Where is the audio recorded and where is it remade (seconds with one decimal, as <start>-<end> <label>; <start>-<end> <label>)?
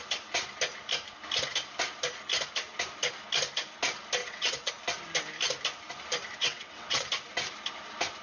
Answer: 0.0-4.2 recorded; 4.2-4.7 remade; 4.7-6.3 recorded; 6.3-7.1 remade; 7.1-8.2 recorded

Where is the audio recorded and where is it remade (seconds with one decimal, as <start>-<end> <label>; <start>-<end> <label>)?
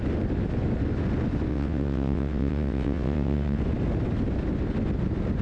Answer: 0.0-1.5 recorded; 1.5-3.6 remade; 3.6-5.4 recorded